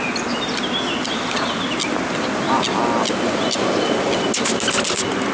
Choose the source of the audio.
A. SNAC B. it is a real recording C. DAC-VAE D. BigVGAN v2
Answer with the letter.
B